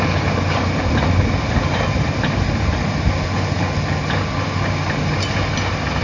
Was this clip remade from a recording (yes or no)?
no